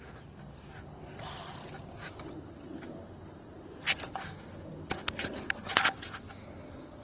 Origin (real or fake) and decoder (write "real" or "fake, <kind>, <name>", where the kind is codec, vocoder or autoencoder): real